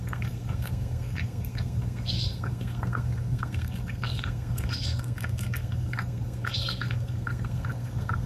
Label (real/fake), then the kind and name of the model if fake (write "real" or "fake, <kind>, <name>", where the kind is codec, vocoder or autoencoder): fake, codec, SNAC